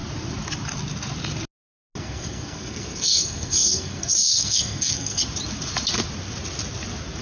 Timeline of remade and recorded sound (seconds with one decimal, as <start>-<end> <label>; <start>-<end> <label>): 0.0-2.0 recorded; 2.0-5.2 remade; 5.2-7.2 recorded